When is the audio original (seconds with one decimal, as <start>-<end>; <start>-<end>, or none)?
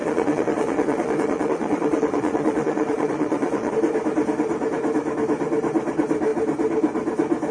3.7-7.5